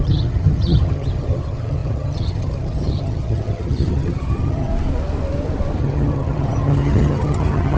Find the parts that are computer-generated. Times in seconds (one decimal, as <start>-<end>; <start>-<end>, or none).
0.0-4.7; 5.8-7.8